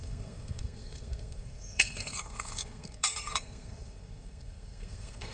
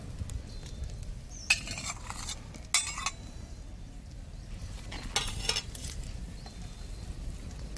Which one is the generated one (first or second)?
first